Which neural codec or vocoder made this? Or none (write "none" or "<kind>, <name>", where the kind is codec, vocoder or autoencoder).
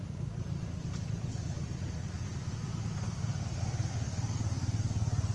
none